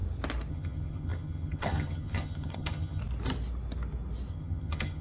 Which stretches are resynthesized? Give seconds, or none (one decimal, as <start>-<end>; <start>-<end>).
0.5-3.0; 4.3-5.0